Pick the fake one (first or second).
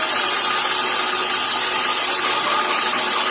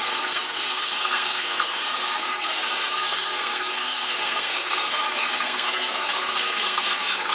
second